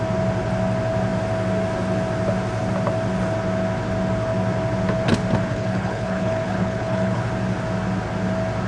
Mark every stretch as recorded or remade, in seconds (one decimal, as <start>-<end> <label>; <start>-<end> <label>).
0.0-5.5 recorded; 5.5-7.3 remade; 7.3-8.7 recorded